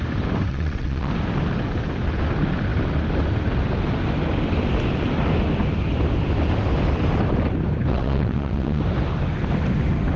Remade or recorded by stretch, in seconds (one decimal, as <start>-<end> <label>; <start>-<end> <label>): 0.0-0.5 recorded; 0.5-1.1 remade; 1.1-7.9 recorded; 7.9-8.8 remade; 8.8-10.2 recorded